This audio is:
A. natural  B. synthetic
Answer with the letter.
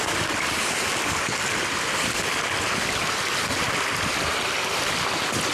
A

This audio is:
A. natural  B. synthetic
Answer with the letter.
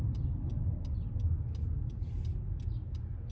A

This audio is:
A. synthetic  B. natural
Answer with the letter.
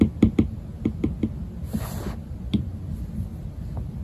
B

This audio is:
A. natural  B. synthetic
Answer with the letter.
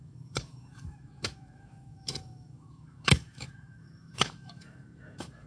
B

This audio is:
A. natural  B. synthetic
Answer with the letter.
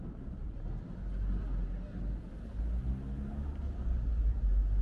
A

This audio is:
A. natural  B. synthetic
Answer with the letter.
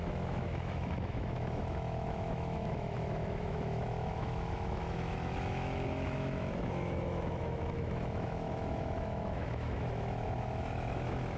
B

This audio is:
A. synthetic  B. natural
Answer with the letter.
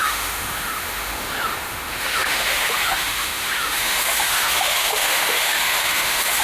A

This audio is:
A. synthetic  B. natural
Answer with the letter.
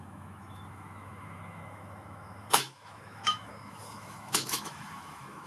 A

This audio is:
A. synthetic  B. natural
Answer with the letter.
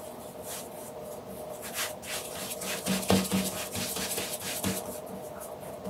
B